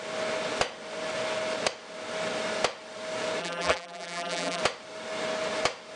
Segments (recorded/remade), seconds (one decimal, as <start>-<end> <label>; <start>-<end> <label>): 0.0-3.4 recorded; 3.4-4.6 remade; 4.6-6.0 recorded